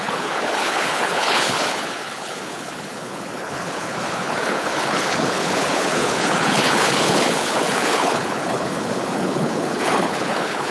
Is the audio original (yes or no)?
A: no